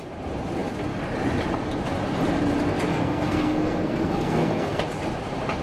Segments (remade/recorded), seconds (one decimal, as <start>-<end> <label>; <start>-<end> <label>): 0.0-2.9 recorded; 2.9-4.8 remade; 4.8-5.6 recorded